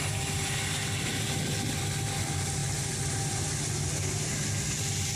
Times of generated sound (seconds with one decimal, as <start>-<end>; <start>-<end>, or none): none